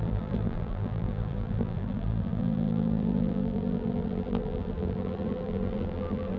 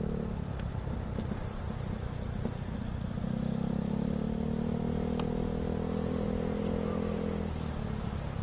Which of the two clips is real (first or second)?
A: second